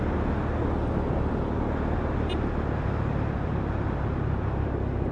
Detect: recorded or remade recorded